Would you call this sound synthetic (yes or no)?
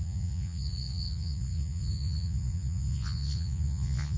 yes